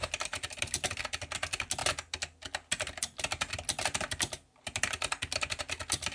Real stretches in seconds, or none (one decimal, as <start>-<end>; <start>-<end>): 0.0-6.1

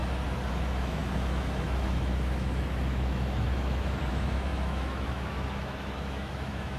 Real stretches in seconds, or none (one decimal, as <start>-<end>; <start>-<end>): 0.0-0.5

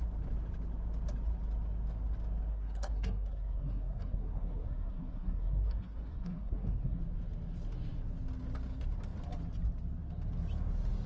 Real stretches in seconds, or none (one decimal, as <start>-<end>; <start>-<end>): 0.0-2.5; 7.0-11.1